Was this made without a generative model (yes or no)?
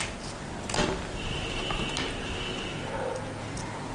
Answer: yes